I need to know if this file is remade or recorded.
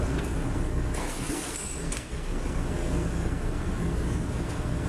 remade